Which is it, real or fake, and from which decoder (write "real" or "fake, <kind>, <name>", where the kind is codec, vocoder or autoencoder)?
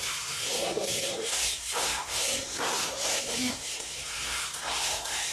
fake, codec, SNAC